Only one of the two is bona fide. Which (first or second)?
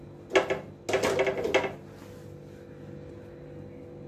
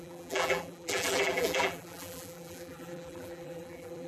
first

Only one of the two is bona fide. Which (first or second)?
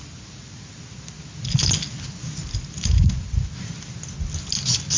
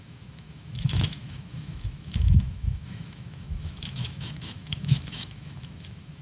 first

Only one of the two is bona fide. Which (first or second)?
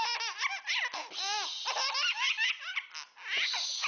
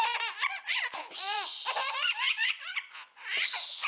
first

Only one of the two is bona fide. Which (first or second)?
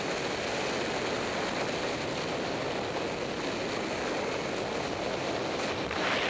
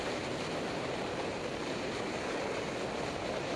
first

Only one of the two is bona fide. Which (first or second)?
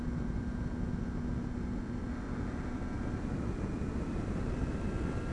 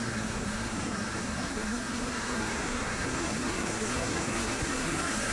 first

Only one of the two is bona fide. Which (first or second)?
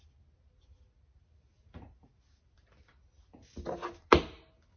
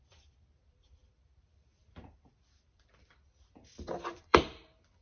first